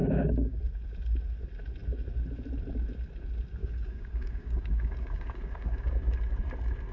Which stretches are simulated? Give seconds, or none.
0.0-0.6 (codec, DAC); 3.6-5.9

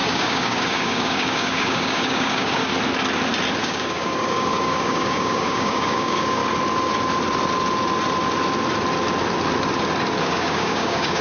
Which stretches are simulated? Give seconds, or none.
0.0-2.7 (codec, DAC); 3.6-6.4; 10.2-11.2

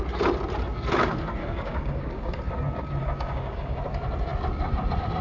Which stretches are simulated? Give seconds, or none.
1.4-2.4 (codec, DAC); 3.0-3.8